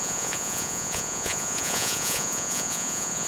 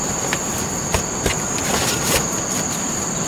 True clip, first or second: second